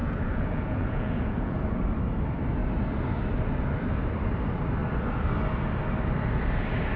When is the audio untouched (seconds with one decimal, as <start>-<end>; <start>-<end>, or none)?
1.8-7.0